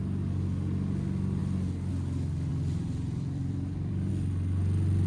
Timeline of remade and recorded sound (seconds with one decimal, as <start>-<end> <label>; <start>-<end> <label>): 0.0-2.5 recorded; 2.5-4.1 remade; 4.1-5.1 recorded